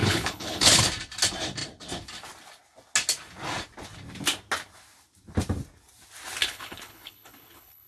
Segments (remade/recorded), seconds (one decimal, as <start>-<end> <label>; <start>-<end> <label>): 0.0-0.8 remade; 0.8-6.4 recorded; 6.4-7.9 remade